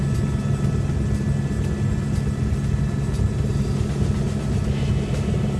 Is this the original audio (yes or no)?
yes